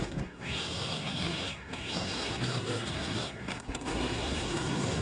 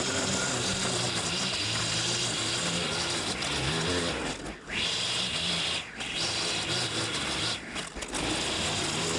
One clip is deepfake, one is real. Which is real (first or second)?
second